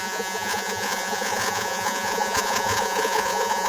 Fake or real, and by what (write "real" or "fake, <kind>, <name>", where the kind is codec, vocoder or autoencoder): fake, vocoder, Vocos